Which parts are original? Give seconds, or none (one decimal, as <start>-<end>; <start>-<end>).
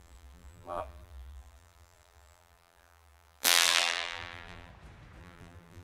4.7-5.2